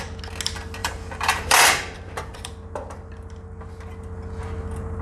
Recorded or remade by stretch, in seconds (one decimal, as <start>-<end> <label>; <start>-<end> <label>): 0.0-0.8 recorded; 0.8-2.5 remade; 2.5-5.0 recorded